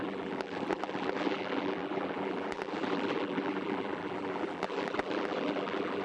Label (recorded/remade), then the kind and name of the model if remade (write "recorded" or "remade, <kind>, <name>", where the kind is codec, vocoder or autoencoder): remade, vocoder, BigVGAN v2